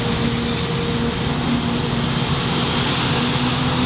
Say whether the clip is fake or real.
real